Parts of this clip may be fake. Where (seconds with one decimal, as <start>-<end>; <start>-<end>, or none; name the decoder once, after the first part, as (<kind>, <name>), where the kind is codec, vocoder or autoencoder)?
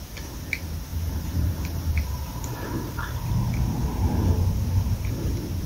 0.9-3.3 (vocoder, BigVGAN v2)